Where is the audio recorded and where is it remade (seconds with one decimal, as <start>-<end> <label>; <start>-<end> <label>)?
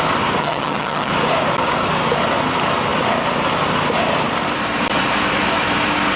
0.0-0.4 recorded; 0.4-1.1 remade; 1.1-6.2 recorded